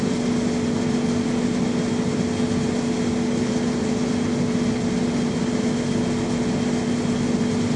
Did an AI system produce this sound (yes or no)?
no